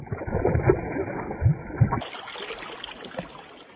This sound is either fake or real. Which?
real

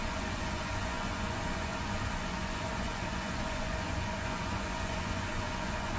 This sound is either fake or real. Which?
fake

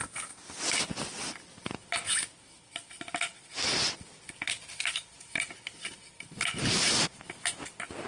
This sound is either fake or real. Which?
real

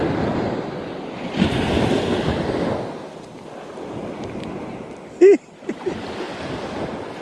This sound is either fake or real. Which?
real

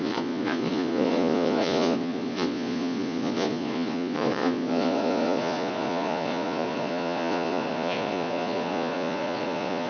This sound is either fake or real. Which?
fake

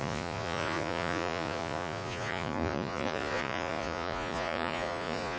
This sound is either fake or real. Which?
fake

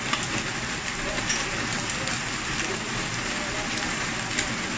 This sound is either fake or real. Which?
real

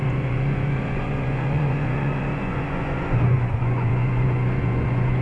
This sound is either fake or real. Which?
fake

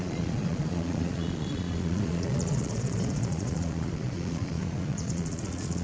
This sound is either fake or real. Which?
fake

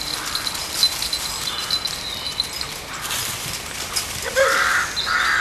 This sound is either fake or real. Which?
real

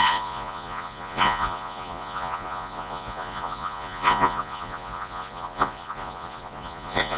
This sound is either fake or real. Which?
fake